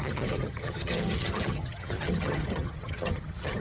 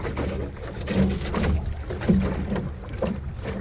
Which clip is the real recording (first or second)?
second